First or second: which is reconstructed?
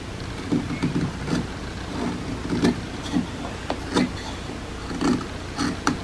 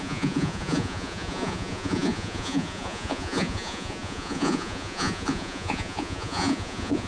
second